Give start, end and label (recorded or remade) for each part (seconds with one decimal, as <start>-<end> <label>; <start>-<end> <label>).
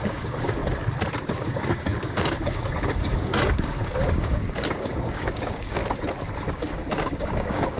0.0-0.6 remade; 0.6-1.3 recorded; 1.3-5.8 remade; 5.8-6.5 recorded; 6.5-7.8 remade